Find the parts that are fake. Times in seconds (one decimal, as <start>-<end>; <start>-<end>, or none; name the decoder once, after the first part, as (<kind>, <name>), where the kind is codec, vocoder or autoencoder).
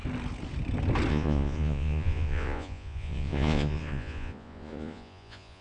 1.1-5.6 (vocoder, Vocos)